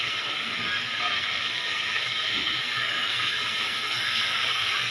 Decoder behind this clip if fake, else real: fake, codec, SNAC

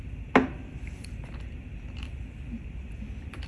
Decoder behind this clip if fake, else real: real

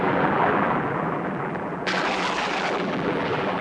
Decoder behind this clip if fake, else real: fake, vocoder, BigVGAN v2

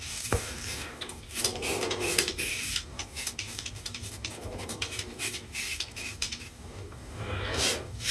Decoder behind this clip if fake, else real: fake, codec, DAC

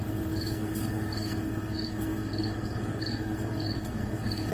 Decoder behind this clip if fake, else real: fake, codec, SNAC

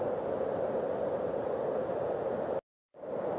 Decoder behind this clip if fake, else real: real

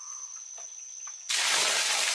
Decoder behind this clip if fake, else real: real